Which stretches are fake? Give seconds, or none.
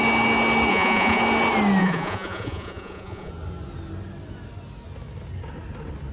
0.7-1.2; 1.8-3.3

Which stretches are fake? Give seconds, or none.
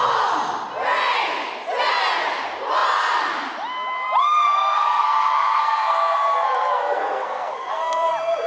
4.2-8.1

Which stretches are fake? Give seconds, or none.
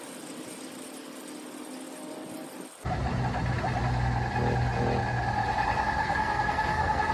6.0-7.1